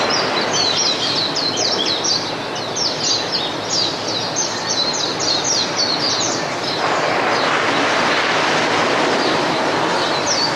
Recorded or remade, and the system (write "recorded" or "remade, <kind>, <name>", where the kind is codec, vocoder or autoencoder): recorded